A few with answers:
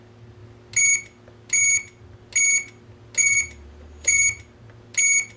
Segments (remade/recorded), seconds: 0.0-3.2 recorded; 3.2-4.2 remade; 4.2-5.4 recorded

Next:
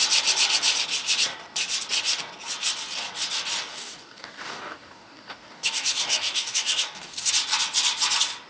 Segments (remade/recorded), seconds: 0.0-3.7 recorded; 3.7-7.3 remade; 7.3-8.5 recorded

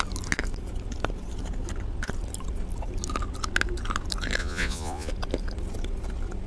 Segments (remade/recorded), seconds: 0.0-4.4 recorded; 4.4-5.1 remade; 5.1-6.5 recorded

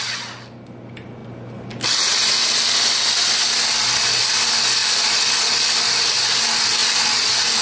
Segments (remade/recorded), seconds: 0.0-7.6 recorded

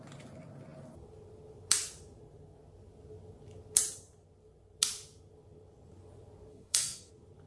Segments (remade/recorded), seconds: 0.0-6.5 recorded; 6.5-7.1 remade; 7.1-7.5 recorded

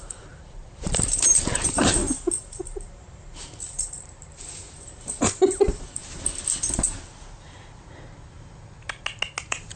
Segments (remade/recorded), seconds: 0.0-2.0 remade; 2.0-3.0 recorded; 3.0-6.0 remade; 6.0-9.4 recorded; 9.4-9.8 remade

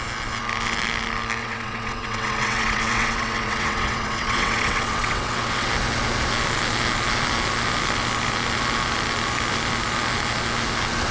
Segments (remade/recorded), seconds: 0.0-1.4 recorded; 1.4-5.7 remade; 5.7-11.1 recorded

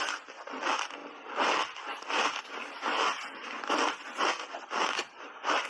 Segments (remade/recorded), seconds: 0.0-5.7 recorded